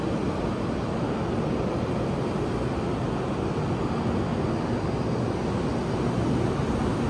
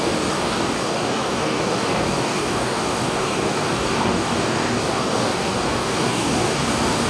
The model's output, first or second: second